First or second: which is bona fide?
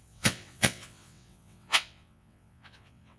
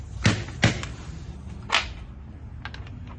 second